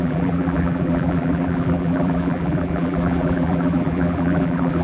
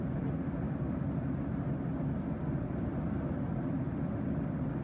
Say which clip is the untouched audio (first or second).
second